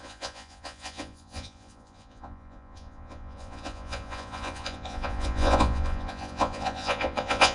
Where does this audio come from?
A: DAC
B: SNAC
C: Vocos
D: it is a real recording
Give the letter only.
C